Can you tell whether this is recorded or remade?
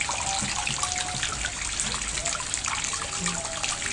recorded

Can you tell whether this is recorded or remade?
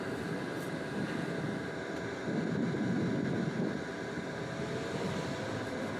remade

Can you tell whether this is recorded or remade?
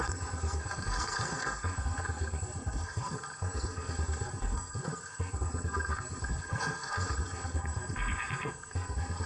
remade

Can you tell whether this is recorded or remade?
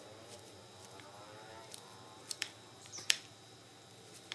remade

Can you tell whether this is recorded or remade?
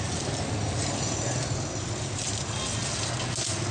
recorded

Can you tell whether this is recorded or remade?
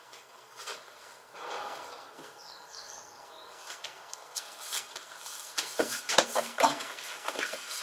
remade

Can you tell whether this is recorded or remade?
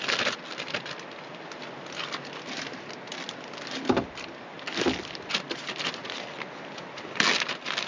recorded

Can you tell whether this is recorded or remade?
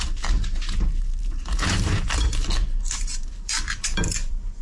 remade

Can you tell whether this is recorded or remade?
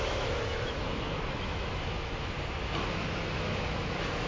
remade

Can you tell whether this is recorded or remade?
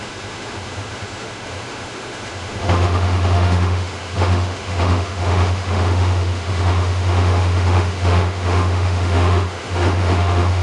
remade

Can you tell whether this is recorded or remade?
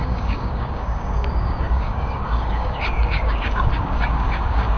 remade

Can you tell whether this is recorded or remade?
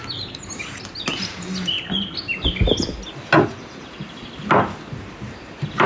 recorded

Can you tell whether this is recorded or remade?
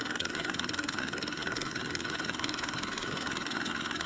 remade